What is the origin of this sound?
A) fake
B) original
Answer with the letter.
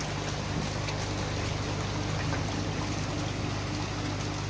B